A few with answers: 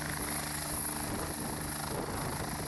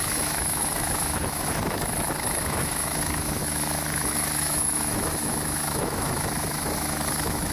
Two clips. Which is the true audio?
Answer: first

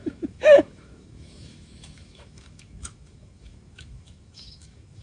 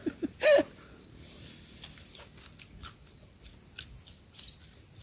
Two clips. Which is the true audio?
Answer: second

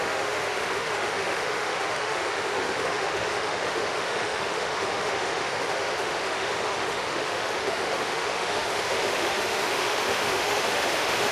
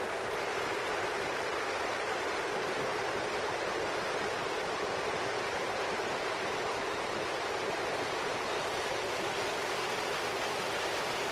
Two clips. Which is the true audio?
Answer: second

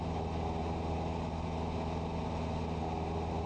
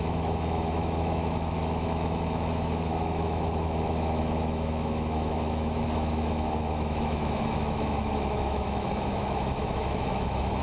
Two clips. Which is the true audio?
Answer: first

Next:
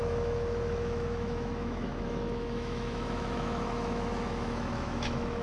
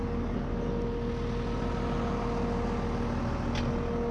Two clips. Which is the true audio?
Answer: second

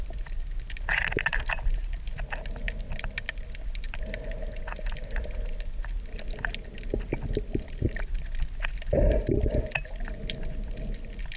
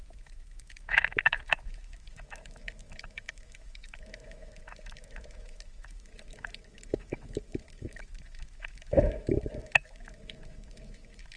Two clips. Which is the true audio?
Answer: first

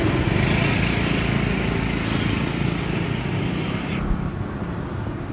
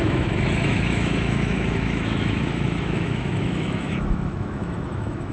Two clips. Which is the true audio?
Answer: first